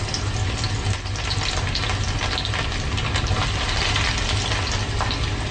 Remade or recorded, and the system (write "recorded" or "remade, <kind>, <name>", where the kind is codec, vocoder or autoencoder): recorded